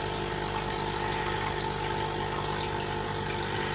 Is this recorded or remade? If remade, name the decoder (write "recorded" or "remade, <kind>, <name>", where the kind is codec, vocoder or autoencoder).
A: recorded